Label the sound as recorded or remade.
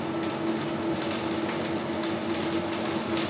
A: recorded